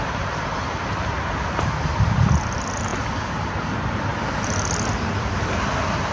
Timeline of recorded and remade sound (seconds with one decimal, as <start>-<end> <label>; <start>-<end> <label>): 0.0-4.1 remade; 4.1-6.1 recorded